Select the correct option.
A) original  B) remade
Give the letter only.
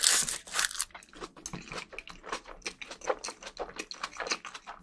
A